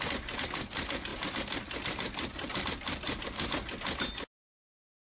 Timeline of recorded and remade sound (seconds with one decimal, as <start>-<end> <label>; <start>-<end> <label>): 0.0-5.0 recorded